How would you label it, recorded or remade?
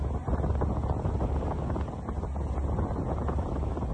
recorded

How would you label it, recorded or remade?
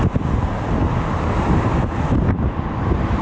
recorded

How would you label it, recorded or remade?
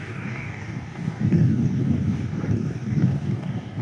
remade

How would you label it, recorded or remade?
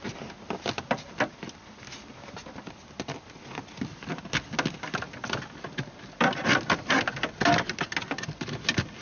recorded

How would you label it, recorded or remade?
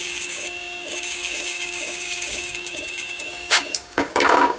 remade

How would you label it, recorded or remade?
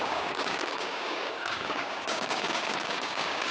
remade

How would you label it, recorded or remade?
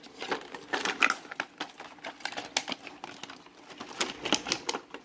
recorded